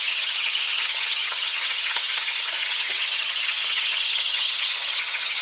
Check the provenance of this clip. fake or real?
fake